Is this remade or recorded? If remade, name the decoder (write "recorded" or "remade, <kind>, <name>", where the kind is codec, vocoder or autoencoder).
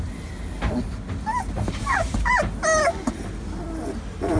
recorded